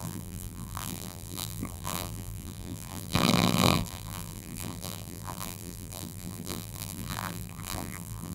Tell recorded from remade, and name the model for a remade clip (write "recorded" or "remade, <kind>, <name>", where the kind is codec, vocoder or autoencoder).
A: remade, vocoder, BigVGAN v2